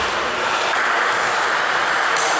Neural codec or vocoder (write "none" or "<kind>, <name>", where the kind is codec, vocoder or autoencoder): none